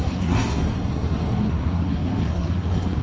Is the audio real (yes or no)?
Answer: no